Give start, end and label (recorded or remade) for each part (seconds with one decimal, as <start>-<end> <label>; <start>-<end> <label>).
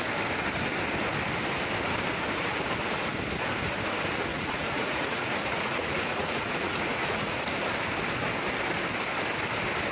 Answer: 0.0-4.3 recorded; 4.3-7.4 remade; 7.4-9.9 recorded